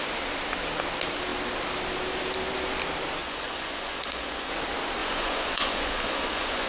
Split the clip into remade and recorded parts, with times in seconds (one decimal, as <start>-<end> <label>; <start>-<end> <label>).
0.0-3.2 recorded; 3.2-4.5 remade; 4.5-5.0 recorded; 5.0-6.7 remade